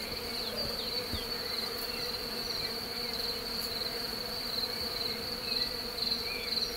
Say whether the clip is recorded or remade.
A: recorded